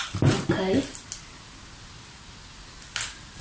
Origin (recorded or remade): recorded